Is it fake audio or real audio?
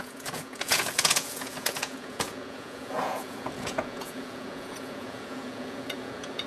fake